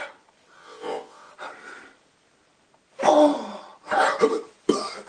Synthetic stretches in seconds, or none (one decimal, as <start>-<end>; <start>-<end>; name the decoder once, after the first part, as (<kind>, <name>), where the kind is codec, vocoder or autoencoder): 0.6-1.3 (vocoder, WaveNeXt)